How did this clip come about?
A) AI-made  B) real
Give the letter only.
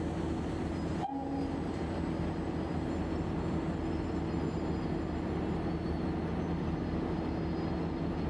B